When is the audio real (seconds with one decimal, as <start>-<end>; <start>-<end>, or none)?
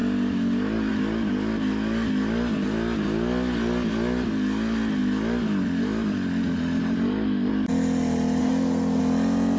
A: 0.0-8.4; 9.0-9.6